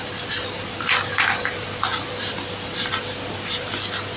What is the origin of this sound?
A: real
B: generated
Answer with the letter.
A